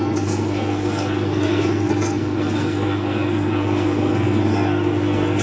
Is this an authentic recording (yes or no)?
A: no